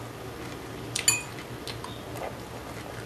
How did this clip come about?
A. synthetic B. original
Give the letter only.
B